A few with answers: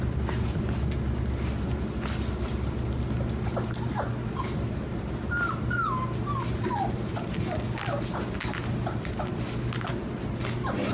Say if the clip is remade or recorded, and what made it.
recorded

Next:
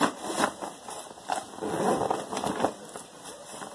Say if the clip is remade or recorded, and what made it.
recorded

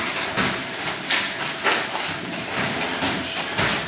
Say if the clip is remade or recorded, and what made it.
recorded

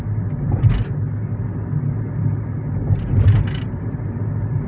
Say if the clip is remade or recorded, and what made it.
recorded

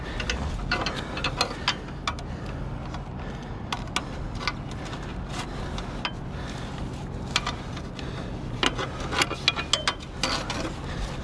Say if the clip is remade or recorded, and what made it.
recorded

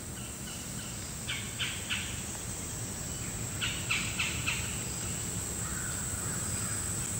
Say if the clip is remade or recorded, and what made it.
recorded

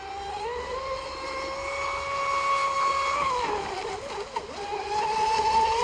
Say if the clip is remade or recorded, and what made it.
recorded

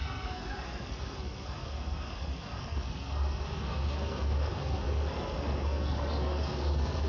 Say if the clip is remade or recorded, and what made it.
remade, codec, SNAC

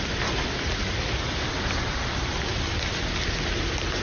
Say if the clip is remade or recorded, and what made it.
recorded